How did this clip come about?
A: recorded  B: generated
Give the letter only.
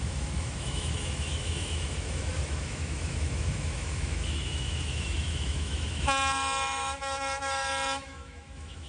B